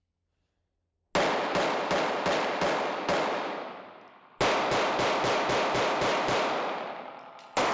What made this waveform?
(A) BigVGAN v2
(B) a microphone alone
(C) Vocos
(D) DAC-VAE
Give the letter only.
B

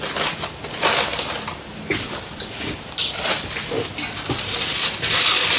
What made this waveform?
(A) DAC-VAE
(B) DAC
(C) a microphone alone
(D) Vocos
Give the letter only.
C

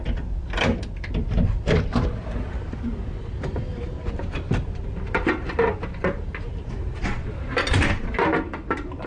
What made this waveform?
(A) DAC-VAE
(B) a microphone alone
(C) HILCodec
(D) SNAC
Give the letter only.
B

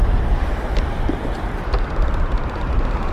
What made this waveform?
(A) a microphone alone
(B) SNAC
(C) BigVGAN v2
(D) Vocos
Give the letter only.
C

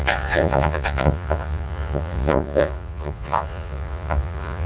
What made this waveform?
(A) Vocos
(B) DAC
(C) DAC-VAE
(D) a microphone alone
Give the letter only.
A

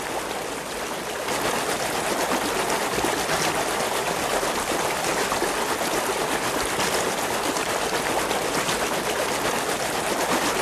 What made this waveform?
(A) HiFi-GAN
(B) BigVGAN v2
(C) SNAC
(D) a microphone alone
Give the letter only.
D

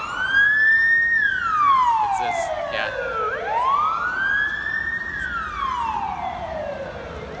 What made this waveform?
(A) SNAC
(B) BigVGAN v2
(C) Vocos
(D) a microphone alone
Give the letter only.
D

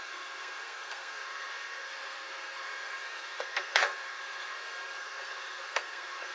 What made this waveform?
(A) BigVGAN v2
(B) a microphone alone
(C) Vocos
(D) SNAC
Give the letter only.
D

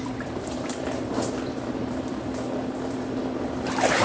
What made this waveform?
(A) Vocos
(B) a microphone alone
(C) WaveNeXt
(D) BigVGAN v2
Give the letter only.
D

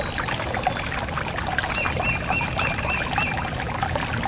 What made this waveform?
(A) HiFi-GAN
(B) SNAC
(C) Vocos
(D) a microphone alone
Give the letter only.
D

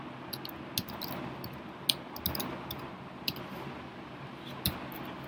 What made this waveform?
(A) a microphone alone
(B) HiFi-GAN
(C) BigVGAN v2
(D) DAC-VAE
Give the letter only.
A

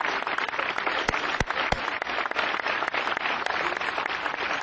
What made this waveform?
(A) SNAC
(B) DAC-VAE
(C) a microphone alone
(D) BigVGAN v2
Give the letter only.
C